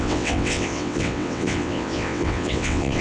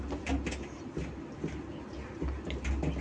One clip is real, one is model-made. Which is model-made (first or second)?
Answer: first